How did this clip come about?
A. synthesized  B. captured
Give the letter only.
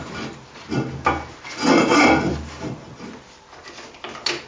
B